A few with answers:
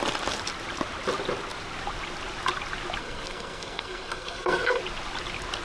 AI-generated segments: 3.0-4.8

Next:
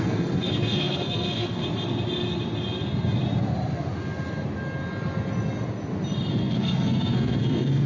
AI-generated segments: 0.0-1.6; 6.3-7.9

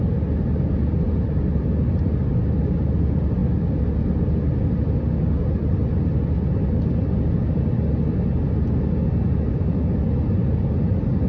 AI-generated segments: none

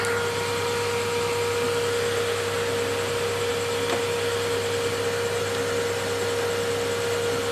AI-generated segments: none